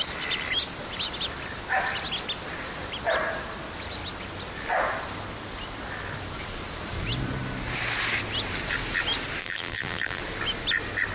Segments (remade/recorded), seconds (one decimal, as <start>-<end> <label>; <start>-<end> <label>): 0.0-9.4 recorded; 9.4-10.2 remade; 10.2-11.1 recorded